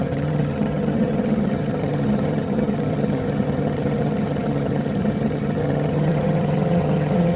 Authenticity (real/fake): fake